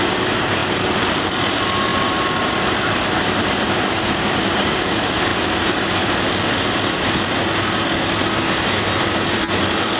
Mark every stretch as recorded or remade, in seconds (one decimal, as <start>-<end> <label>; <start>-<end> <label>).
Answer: 0.0-0.6 recorded; 0.6-1.4 remade; 1.4-1.9 recorded; 1.9-3.9 remade; 3.9-10.0 recorded